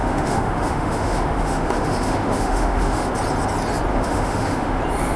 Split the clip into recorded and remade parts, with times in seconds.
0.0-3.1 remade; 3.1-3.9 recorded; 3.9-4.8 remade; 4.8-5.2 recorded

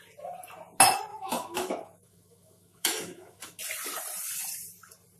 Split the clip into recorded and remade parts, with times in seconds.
0.0-1.1 recorded; 1.1-3.6 remade; 3.6-5.2 recorded